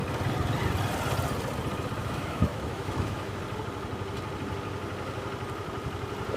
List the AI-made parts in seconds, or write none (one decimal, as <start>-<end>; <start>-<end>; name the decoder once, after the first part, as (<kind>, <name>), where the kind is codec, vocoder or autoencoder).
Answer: 2.0-3.4 (autoencoder, DAC-VAE)